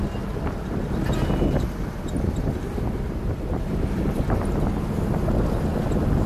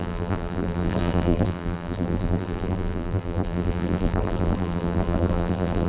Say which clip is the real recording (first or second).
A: first